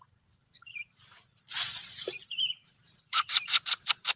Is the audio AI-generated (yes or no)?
yes